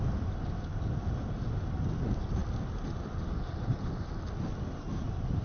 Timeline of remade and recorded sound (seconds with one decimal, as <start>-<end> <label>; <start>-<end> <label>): 0.0-5.4 recorded